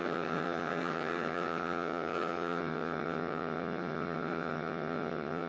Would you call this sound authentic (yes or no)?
no